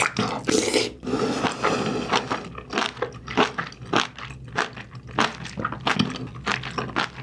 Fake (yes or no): no